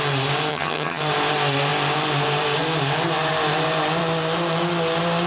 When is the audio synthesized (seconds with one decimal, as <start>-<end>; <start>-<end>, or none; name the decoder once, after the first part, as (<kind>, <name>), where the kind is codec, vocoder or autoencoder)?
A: 0.5-1.0 (vocoder, HiFi-GAN)